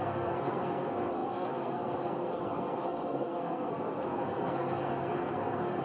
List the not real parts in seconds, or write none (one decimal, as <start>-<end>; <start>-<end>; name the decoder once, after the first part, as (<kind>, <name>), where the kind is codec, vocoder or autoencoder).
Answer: 0.0-5.8 (codec, SNAC)